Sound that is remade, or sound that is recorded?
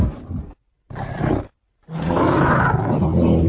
recorded